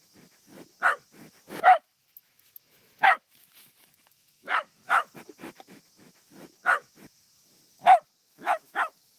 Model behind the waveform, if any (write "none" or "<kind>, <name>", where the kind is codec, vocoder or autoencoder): autoencoder, DAC-VAE